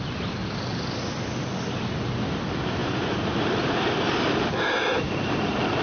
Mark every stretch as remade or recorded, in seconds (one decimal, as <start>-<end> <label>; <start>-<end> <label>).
0.0-2.8 recorded; 2.8-4.0 remade; 4.0-5.8 recorded